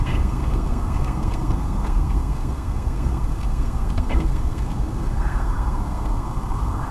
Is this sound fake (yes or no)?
yes